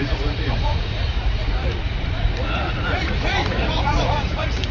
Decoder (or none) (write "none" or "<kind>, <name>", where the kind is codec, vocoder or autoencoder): vocoder, Vocos